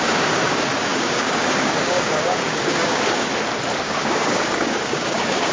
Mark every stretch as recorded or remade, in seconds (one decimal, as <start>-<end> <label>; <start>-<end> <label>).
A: 0.0-3.3 remade; 3.3-3.8 recorded; 3.8-5.5 remade